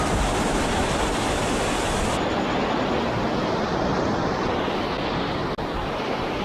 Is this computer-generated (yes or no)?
no